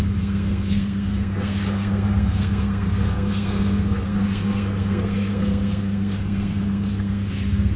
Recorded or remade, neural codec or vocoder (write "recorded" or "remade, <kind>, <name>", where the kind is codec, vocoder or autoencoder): remade, codec, SNAC